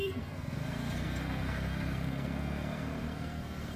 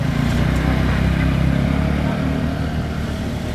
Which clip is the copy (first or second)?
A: first